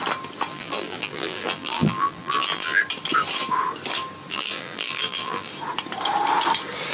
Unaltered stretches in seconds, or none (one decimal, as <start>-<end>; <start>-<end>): 0.0-0.5; 2.8-4.3; 5.5-6.9